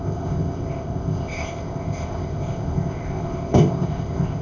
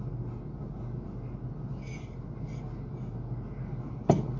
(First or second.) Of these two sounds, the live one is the second